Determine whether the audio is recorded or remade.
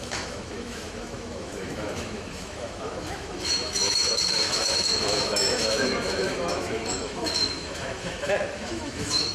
remade